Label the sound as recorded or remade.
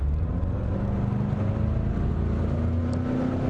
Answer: recorded